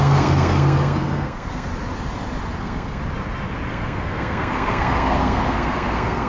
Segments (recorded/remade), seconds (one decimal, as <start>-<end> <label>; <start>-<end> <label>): 0.0-1.7 remade; 1.7-2.6 recorded; 2.6-3.0 remade; 3.0-3.7 recorded; 3.7-6.3 remade